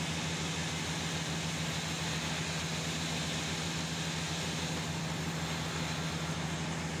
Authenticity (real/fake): real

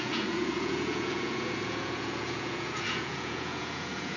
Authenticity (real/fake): fake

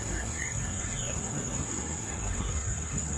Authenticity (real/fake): fake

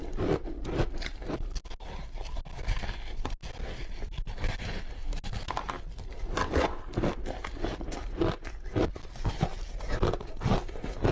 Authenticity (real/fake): real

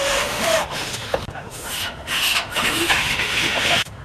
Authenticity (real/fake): fake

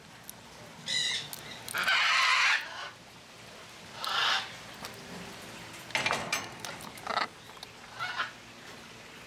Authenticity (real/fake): real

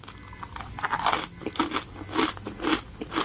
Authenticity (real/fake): real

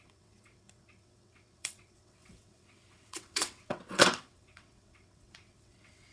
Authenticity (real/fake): fake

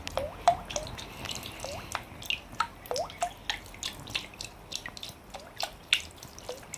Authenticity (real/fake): real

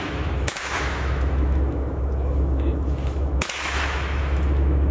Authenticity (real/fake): fake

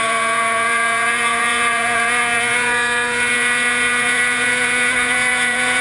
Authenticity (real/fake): fake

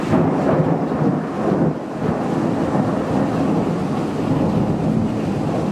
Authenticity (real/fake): real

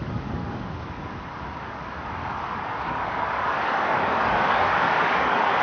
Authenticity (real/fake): fake